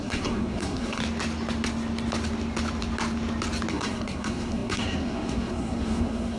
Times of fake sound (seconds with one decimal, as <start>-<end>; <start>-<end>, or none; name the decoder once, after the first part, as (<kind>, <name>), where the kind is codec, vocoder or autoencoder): 0.0-1.0 (codec, SNAC); 3.7-6.4